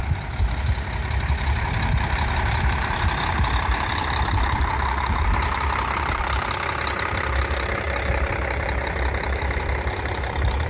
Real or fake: fake